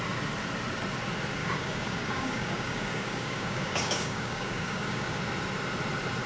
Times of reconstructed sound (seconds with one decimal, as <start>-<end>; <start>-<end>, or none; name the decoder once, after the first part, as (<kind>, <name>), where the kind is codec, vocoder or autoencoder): 1.4-5.2 (codec, DAC)